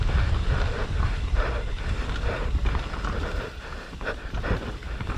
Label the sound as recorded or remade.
remade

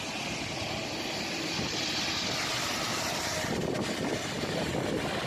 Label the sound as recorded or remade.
recorded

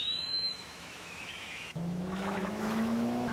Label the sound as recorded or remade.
remade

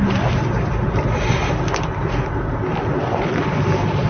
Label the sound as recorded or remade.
recorded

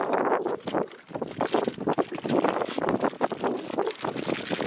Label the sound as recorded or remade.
recorded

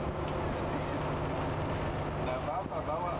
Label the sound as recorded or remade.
recorded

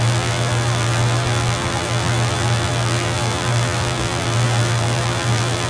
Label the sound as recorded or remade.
remade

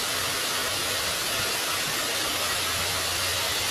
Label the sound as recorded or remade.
recorded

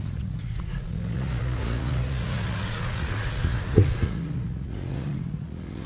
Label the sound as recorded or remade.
remade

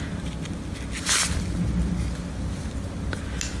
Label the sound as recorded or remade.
recorded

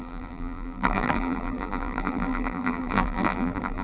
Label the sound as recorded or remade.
remade